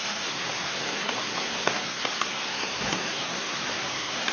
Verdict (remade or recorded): remade